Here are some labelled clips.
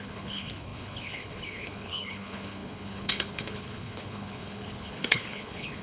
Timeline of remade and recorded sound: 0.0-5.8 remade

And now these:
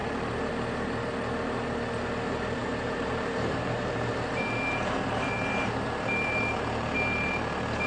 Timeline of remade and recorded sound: 0.0-2.6 recorded; 2.6-7.3 remade; 7.3-7.9 recorded

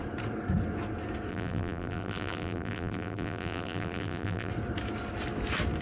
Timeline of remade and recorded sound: 0.0-1.3 recorded; 1.3-4.5 remade; 4.5-5.8 recorded

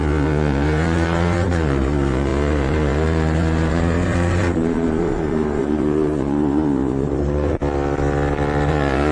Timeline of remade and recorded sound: 0.0-7.6 remade; 7.6-8.7 recorded; 8.7-9.1 remade